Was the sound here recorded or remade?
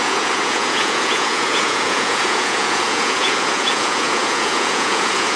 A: remade